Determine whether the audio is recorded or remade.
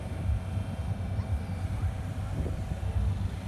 recorded